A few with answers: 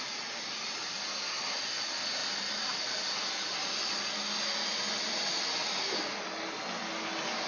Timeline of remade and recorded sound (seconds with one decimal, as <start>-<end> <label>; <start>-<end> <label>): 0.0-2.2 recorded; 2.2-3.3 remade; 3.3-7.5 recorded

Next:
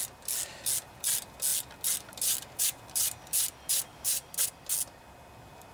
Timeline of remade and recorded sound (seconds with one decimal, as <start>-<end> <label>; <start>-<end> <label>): 0.0-3.9 recorded; 3.9-4.5 remade; 4.5-5.7 recorded

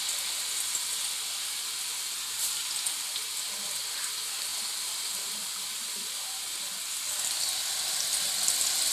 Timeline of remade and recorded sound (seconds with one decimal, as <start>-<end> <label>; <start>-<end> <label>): 0.0-8.9 recorded